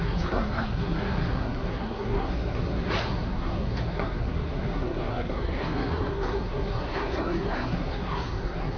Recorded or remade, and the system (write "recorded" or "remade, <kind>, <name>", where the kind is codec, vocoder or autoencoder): remade, codec, SNAC